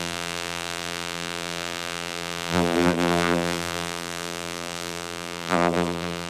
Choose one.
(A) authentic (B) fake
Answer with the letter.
B